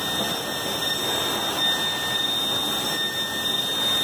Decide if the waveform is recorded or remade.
recorded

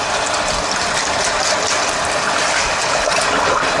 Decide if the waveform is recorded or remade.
recorded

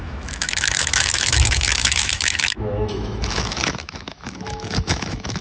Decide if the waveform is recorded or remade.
remade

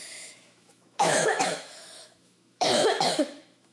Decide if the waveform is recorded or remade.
remade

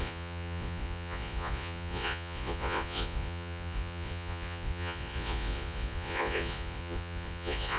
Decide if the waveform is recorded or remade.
remade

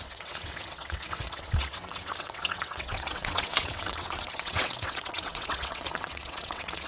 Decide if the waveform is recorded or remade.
remade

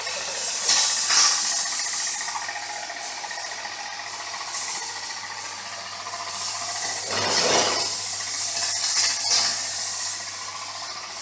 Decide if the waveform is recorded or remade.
recorded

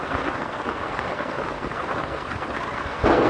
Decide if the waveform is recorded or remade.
remade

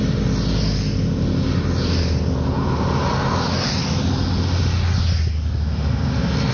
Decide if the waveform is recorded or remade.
recorded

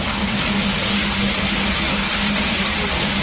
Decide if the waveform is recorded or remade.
recorded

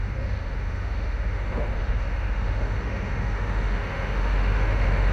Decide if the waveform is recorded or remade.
remade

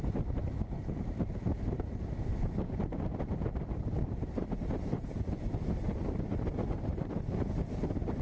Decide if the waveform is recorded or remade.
remade